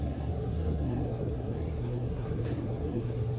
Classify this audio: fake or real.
fake